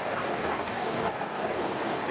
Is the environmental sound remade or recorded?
remade